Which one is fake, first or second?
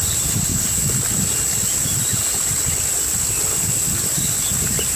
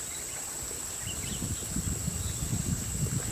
second